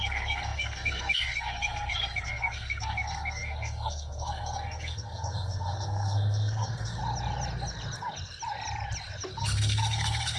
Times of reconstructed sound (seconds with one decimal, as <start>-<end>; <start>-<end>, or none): 0.0-7.0; 9.3-10.4